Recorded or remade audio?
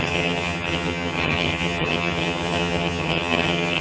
remade